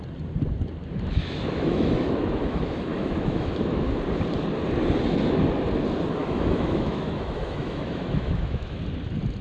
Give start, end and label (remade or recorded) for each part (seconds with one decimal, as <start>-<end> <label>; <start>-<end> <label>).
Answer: 0.0-1.2 recorded; 1.2-4.0 remade; 4.0-6.2 recorded; 6.2-8.8 remade; 8.8-9.4 recorded